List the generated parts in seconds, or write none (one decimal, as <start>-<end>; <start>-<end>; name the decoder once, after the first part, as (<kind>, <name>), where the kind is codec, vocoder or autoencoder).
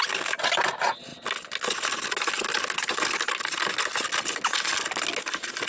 none